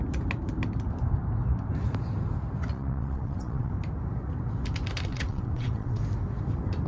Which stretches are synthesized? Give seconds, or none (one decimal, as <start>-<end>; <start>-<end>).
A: 2.7-3.7; 5.1-6.0